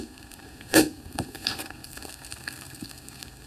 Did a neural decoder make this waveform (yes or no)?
yes